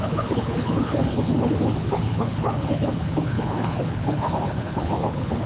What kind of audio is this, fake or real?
fake